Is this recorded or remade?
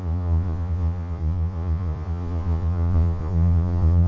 remade